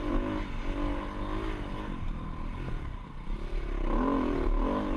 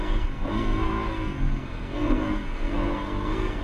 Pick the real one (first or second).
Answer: first